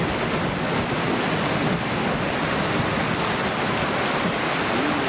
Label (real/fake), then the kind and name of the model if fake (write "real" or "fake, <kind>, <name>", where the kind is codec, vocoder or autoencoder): real